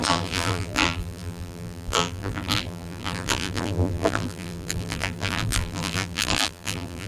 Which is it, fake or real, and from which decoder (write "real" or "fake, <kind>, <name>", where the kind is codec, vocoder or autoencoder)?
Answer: fake, vocoder, BigVGAN v2